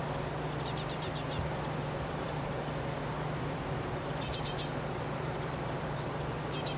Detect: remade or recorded remade